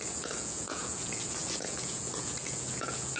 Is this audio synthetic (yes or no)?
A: yes